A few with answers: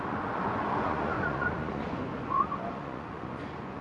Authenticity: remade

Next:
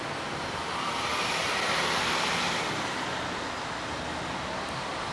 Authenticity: recorded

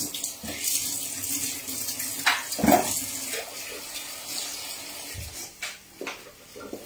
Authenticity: recorded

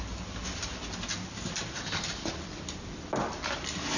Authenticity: recorded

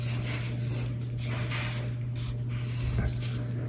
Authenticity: recorded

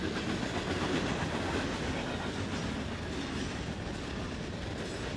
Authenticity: recorded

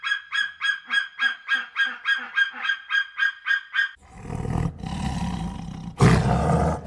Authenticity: recorded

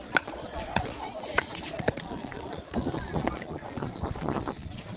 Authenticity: remade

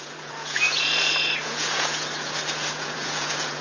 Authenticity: remade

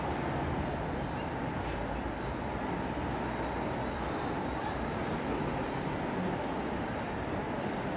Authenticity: recorded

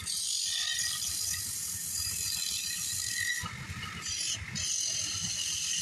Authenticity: recorded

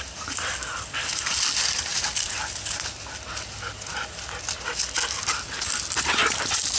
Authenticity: recorded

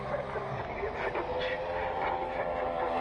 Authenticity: recorded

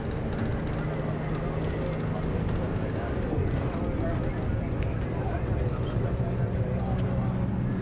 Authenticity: recorded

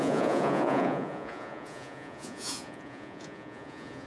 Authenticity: remade